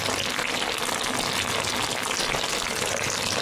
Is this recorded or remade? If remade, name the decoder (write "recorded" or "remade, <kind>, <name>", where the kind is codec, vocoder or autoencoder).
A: recorded